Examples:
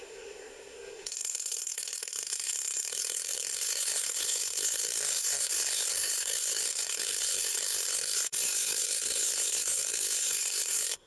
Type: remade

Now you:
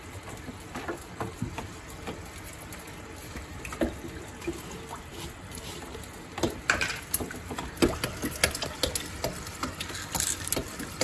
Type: recorded